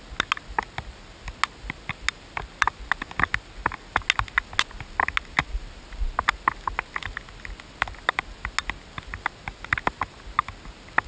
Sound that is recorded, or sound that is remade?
recorded